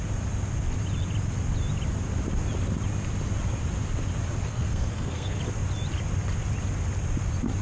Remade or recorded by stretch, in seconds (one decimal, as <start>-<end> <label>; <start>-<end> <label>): 0.0-4.5 recorded; 4.5-5.4 remade; 5.4-7.6 recorded